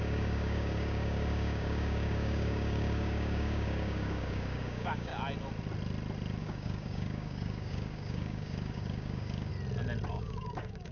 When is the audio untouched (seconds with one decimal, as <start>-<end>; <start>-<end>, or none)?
5.1-6.4; 9.5-10.1